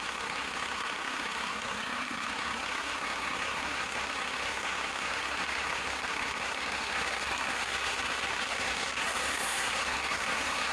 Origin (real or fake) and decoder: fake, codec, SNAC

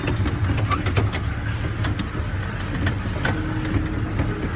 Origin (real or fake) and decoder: real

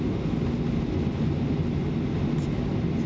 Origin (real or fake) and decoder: real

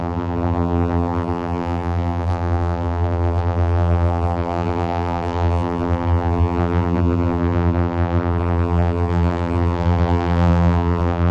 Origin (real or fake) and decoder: fake, vocoder, BigVGAN v2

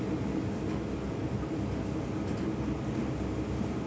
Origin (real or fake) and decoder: real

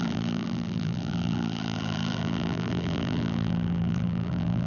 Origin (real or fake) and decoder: fake, vocoder, BigVGAN v2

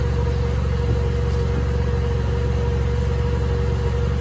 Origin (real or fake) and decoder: real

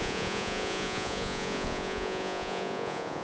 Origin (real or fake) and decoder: fake, vocoder, Vocos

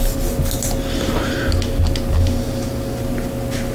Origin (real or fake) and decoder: real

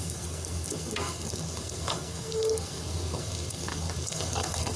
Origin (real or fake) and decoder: fake, codec, SNAC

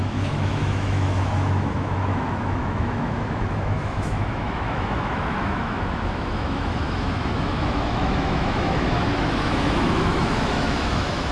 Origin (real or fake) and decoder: fake, autoencoder, DAC-VAE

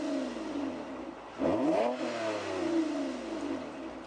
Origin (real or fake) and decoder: real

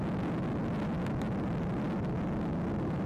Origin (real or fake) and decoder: real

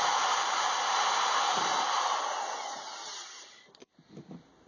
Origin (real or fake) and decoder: real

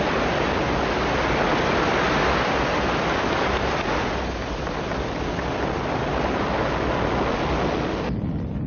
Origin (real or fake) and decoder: real